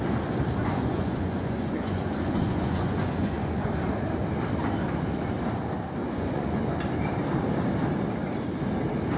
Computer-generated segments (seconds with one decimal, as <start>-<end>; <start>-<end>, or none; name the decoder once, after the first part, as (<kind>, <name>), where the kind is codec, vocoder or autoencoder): 0.6-3.7 (vocoder, Vocos); 6.0-6.6